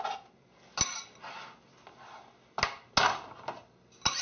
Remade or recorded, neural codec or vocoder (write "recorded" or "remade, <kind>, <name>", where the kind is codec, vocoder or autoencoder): recorded